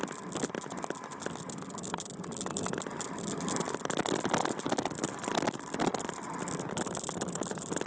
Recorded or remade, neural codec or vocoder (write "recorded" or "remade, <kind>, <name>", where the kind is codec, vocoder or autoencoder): recorded